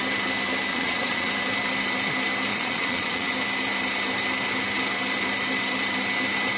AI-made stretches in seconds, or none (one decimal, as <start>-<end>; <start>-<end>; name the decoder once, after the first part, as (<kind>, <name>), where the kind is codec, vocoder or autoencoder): 0.7-1.3 (vocoder, Vocos); 2.5-3.3